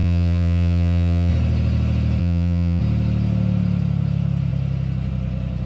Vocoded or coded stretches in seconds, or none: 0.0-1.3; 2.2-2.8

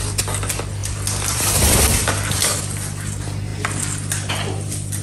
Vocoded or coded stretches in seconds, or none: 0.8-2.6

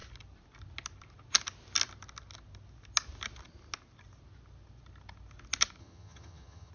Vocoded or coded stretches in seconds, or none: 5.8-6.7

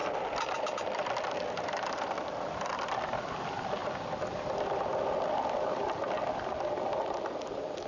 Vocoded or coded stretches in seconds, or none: 0.0-3.2